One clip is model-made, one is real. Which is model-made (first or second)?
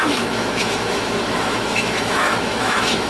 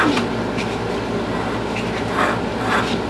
first